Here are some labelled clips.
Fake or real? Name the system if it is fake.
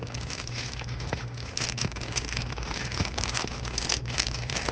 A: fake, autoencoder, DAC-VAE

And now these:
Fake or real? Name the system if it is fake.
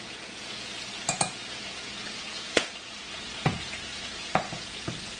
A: fake, vocoder, Vocos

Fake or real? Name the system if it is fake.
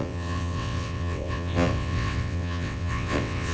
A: fake, vocoder, WaveNeXt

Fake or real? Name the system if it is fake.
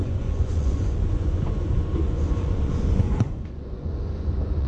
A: fake, vocoder, Vocos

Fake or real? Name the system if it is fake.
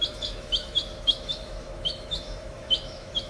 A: fake, autoencoder, DAC-VAE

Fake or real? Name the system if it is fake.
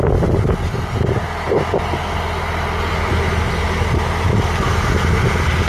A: real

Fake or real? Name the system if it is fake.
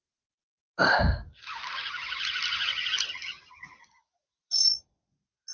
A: real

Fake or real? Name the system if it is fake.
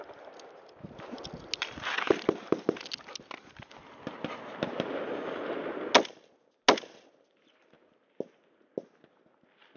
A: real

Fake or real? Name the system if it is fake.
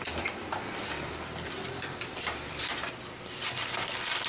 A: fake, vocoder, BigVGAN v2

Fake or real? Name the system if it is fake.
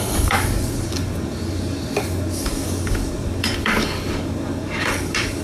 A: fake, codec, DAC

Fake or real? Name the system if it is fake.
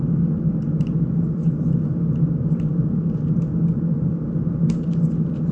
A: real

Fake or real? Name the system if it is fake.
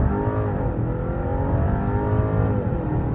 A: real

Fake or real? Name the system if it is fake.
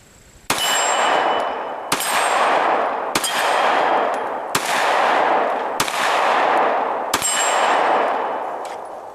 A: real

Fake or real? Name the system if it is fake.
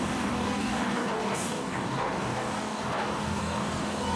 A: fake, codec, DAC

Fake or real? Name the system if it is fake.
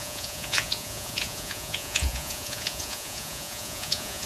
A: fake, vocoder, Vocos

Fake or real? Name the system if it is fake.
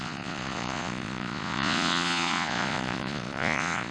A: fake, vocoder, Vocos